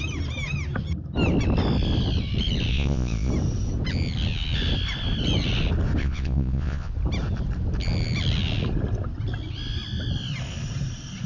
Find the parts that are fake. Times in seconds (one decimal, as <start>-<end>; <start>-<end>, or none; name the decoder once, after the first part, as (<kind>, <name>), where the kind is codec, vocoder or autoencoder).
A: 2.7-3.3 (vocoder, Vocos); 6.0-6.9